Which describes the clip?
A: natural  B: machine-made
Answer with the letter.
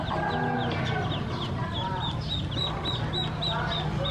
A